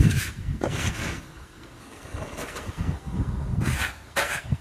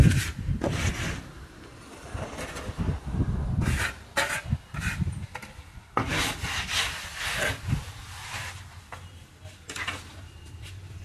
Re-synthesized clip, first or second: first